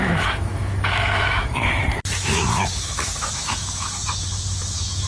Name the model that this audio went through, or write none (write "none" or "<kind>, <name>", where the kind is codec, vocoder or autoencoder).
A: autoencoder, DAC-VAE